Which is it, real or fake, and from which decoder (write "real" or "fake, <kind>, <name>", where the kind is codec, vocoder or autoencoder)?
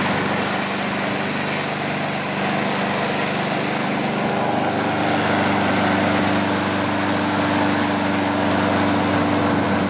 real